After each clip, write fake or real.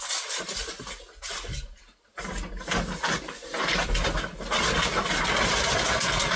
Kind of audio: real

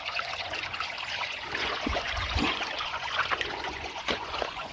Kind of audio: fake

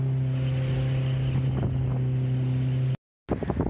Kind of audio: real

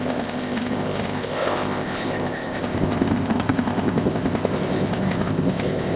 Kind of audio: fake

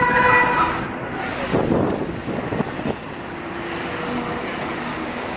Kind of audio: real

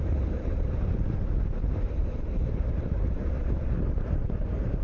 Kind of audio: fake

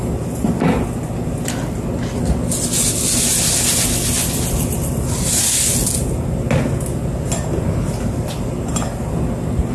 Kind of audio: real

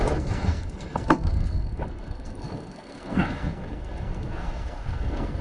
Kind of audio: fake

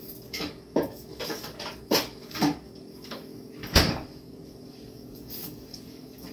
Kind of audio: fake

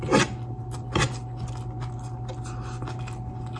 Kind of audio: real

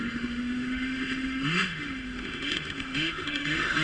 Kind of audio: fake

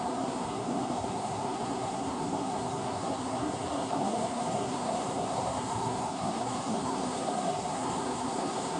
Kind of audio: fake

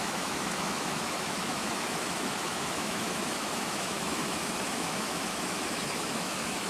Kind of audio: fake